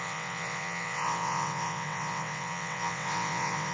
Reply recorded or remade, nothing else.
remade